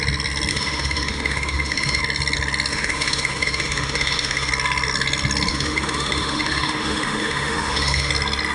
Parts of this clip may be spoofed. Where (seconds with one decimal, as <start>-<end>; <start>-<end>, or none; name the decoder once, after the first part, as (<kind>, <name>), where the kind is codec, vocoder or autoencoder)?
0.5-2.0 (autoencoder, DAC-VAE); 2.7-4.5; 5.5-8.1